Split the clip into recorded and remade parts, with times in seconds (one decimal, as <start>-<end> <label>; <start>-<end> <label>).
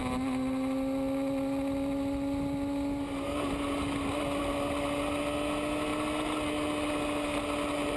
0.0-8.0 recorded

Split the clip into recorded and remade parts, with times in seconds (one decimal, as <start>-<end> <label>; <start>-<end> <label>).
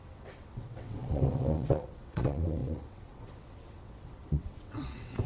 0.0-5.3 remade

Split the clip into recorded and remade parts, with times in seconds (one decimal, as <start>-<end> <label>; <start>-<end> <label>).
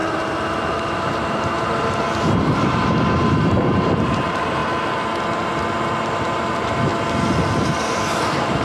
0.0-4.6 remade; 4.6-6.5 recorded; 6.5-6.9 remade; 6.9-8.1 recorded; 8.1-8.6 remade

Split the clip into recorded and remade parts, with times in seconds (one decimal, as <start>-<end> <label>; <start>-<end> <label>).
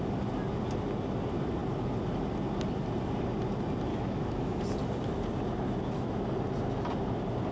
0.0-3.9 recorded; 3.9-4.6 remade; 4.6-7.5 recorded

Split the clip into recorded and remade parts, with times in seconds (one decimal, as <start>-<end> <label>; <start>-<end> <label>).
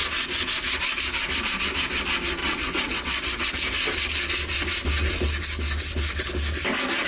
0.0-2.4 recorded; 2.4-3.5 remade; 3.5-7.1 recorded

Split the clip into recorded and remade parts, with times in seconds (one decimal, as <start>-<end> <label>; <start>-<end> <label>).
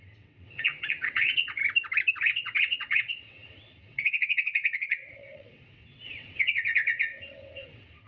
0.0-1.6 remade; 1.6-2.2 recorded; 2.2-8.1 remade